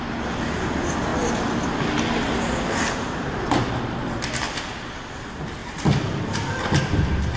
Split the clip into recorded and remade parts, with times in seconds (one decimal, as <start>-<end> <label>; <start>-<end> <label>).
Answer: 0.0-7.4 recorded